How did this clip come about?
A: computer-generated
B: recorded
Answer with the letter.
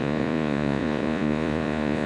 A